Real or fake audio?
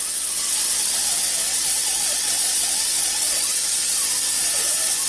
fake